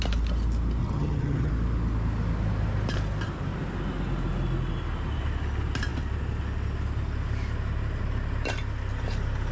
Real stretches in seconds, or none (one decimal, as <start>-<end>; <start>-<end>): 0.0-0.8; 1.5-9.5